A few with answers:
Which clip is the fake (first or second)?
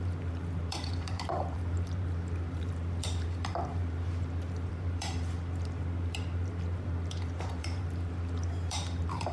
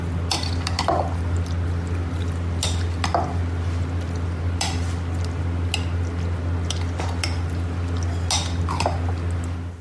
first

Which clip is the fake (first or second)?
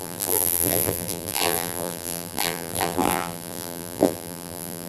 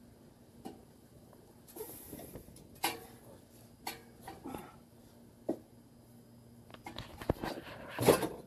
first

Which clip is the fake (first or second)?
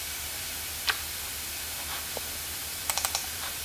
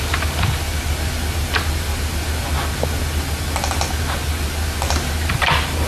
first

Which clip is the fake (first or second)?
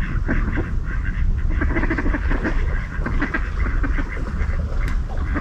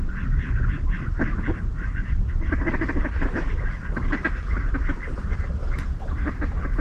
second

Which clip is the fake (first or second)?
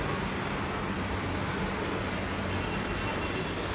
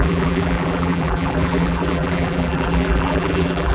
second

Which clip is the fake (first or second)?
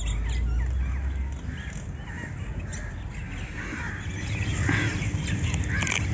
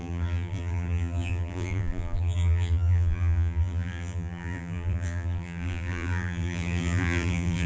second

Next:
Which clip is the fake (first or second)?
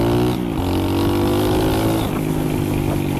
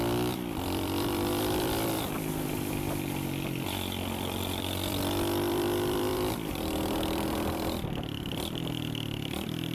second